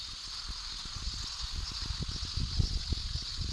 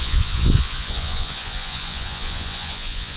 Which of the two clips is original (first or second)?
first